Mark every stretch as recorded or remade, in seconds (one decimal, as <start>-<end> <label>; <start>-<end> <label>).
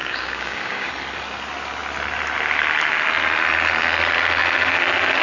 0.0-0.9 remade; 0.9-5.2 recorded